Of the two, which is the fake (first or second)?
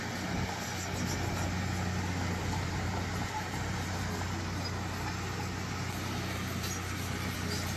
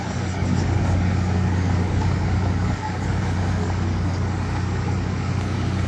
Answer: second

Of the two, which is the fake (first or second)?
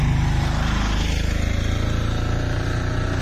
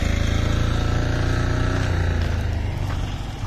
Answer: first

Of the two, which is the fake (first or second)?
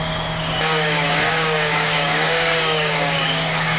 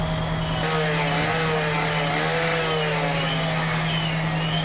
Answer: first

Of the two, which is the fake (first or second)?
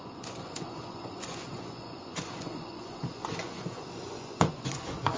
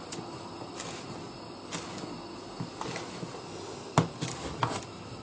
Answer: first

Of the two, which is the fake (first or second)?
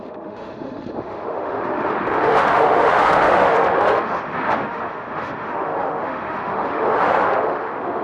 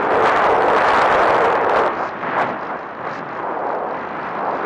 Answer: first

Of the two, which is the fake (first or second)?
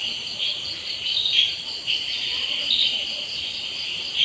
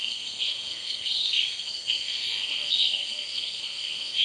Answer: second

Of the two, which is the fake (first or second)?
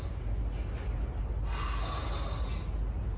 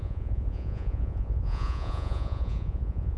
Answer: second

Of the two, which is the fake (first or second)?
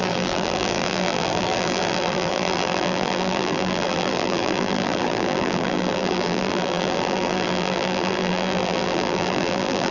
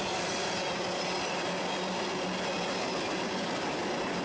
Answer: first